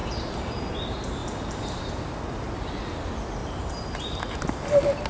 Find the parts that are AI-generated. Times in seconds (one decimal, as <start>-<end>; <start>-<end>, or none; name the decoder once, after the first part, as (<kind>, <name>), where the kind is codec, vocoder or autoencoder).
0.0-0.7 (vocoder, BigVGAN v2); 1.2-1.8; 3.4-4.2